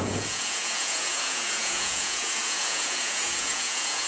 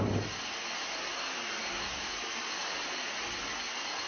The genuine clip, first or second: second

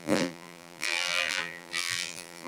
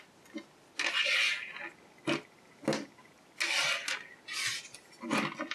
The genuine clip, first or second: second